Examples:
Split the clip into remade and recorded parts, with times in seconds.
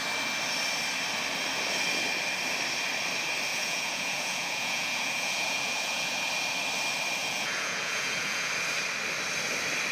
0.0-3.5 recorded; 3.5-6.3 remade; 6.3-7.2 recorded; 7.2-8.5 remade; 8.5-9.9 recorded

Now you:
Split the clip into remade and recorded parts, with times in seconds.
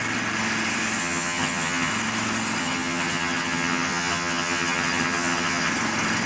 0.0-1.0 recorded; 1.0-1.9 remade; 1.9-2.6 recorded; 2.6-5.7 remade; 5.7-6.3 recorded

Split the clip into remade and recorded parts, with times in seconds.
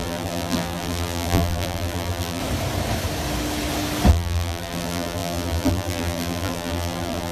0.0-2.4 remade; 2.4-4.1 recorded; 4.1-7.3 remade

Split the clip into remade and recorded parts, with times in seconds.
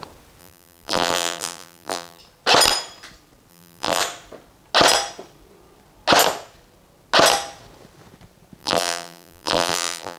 0.0-0.4 recorded; 0.4-2.2 remade; 2.2-3.5 recorded; 3.5-4.0 remade; 4.0-8.6 recorded; 8.6-10.2 remade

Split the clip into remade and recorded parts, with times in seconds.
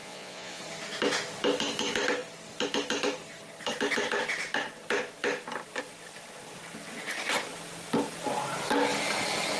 0.0-0.6 remade; 0.6-9.6 recorded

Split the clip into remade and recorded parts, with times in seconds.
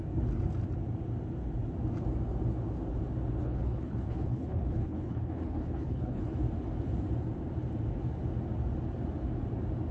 0.0-3.4 recorded; 3.4-6.3 remade; 6.3-9.9 recorded